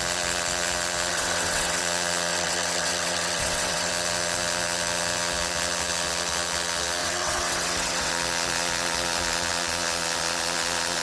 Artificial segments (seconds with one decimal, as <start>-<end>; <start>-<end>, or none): 1.1-1.8; 2.3-3.9; 7.0-8.1